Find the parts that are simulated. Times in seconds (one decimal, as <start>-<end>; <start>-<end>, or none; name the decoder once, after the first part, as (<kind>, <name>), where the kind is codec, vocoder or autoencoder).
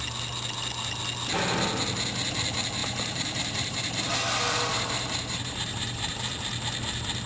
2.8-4.1 (vocoder, BigVGAN v2); 4.7-6.3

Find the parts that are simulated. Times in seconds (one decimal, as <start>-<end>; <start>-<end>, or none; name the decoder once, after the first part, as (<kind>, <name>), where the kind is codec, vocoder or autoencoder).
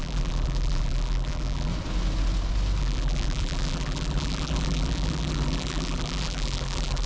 0.0-1.7 (vocoder, BigVGAN v2); 2.8-7.1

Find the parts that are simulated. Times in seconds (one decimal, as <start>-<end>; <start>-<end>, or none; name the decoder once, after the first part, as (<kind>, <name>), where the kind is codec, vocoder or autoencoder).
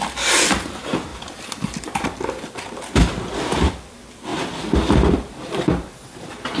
1.1-2.8 (vocoder, BigVGAN v2); 4.3-5.9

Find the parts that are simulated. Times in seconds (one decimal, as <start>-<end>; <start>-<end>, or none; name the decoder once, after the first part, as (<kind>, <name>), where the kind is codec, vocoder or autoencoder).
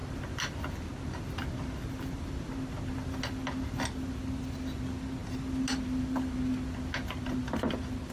none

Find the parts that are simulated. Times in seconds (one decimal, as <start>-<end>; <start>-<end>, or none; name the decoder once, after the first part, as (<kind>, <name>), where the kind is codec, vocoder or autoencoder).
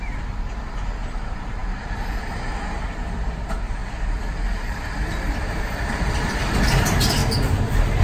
0.0-7.2 (vocoder, BigVGAN v2)